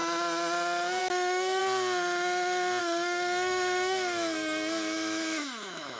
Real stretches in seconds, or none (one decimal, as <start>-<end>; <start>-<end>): 0.0-1.0; 1.6-2.8